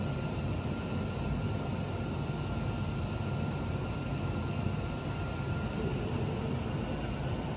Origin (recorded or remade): recorded